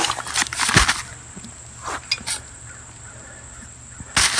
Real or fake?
real